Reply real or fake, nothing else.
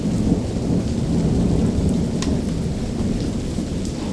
real